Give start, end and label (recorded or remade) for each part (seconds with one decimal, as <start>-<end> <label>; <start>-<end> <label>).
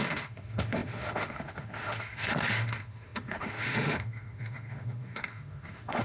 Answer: 0.0-6.0 remade